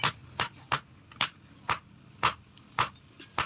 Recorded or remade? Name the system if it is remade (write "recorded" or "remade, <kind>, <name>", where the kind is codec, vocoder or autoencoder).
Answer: recorded